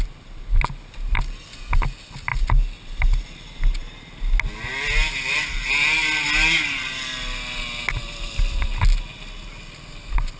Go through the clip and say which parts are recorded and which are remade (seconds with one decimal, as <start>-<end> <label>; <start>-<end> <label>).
0.0-10.4 recorded